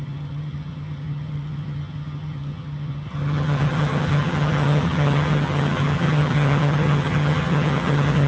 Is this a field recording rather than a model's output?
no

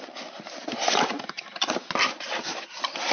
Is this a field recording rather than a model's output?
yes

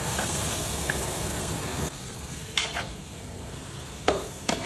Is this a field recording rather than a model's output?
no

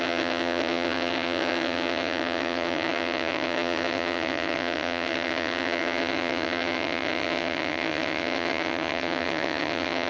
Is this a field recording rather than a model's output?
no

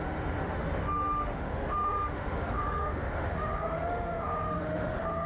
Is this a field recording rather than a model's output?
no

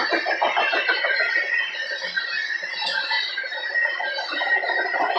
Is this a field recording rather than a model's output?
yes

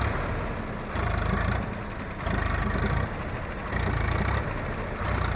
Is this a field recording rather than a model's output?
yes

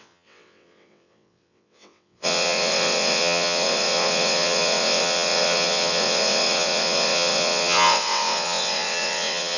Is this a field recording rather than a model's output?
no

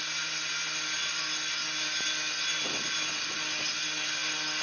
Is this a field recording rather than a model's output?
yes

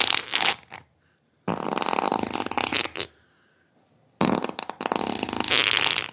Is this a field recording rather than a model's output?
yes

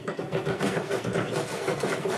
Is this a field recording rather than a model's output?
no